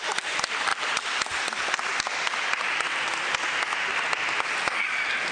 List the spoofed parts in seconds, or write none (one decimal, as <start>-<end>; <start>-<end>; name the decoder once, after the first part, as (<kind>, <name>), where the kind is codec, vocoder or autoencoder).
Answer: none